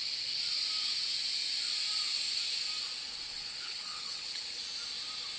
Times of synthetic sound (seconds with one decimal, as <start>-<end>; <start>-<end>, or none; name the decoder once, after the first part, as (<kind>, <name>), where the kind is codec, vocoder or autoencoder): 3.3-4.6 (codec, HILCodec)